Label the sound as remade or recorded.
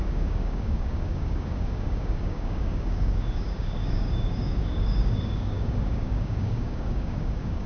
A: remade